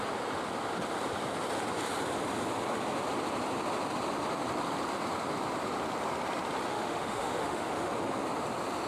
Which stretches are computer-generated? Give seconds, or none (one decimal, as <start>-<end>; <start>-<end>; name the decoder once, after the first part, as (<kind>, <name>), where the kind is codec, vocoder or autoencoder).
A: 6.7-7.9 (autoencoder, DAC-VAE)